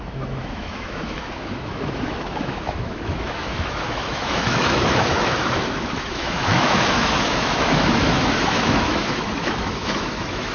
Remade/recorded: remade